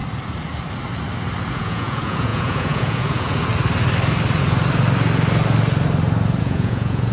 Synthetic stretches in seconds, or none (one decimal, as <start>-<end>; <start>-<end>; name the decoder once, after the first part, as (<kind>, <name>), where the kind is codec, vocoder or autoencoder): 1.5-3.5 (vocoder, Vocos); 6.4-7.1